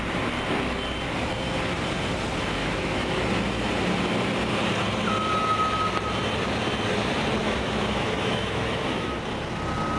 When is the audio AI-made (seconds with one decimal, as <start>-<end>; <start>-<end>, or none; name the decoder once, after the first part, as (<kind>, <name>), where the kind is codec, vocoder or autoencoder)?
2.6-3.2 (autoencoder, DAC-VAE); 7.4-9.1